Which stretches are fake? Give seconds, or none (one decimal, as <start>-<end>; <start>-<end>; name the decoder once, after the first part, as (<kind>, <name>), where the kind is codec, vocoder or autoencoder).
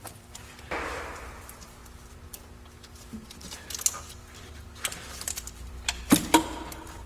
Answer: 0.0-1.8 (vocoder, BigVGAN v2); 4.9-7.1